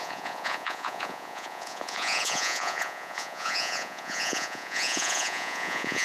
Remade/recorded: remade